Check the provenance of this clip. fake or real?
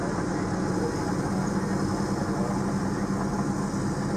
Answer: real